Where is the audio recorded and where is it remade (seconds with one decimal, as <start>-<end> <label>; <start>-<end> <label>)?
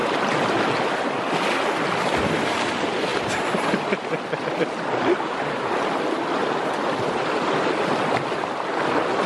0.0-9.3 recorded